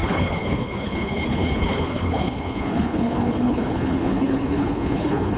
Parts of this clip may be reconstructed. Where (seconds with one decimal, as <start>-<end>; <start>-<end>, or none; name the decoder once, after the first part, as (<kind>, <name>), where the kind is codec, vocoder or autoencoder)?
0.0-5.4 (codec, HILCodec)